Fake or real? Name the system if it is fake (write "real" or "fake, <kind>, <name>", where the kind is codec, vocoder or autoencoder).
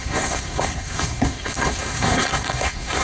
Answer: fake, codec, SNAC